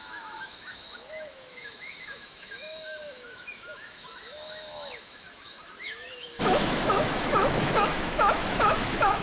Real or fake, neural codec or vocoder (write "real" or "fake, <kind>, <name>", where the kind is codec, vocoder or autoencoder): fake, autoencoder, DAC-VAE